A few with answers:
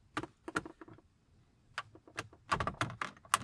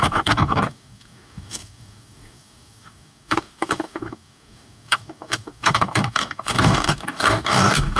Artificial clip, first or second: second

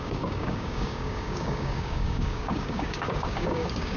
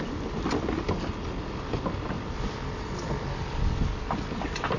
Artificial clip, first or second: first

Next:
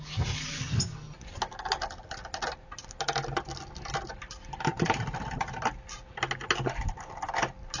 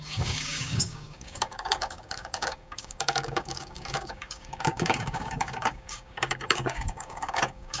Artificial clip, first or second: second